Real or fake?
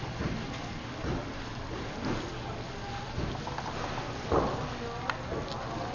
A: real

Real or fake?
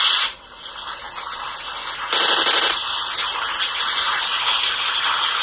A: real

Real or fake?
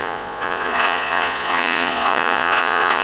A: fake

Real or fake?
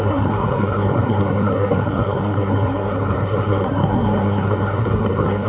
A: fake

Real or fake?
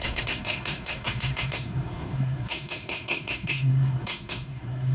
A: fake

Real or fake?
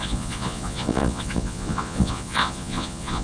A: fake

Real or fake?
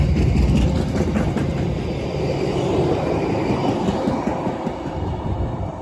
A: real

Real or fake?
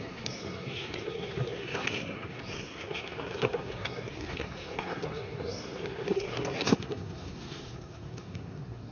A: fake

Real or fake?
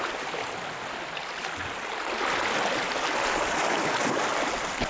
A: real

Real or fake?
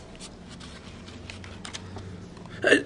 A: real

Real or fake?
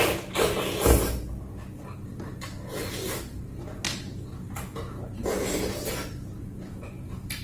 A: real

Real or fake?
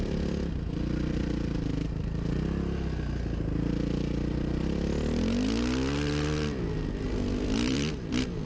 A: real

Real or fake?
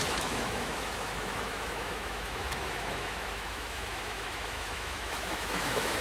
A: fake